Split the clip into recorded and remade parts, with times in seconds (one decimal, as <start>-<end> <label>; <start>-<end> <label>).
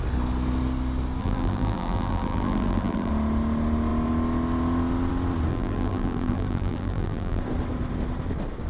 0.0-1.2 recorded; 1.2-3.1 remade; 3.1-5.5 recorded; 5.5-7.4 remade; 7.4-8.7 recorded